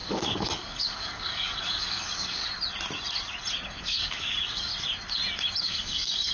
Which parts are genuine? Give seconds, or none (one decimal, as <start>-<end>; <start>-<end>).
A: 2.4-3.8; 4.7-5.6